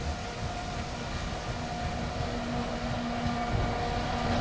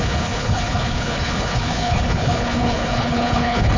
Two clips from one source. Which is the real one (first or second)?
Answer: first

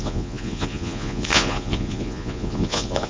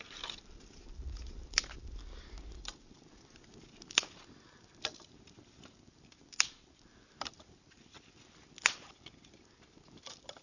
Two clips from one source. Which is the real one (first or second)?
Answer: second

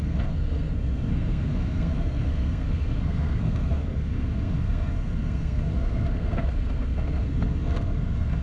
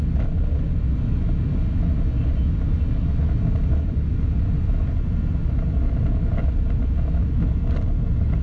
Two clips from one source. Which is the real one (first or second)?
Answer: second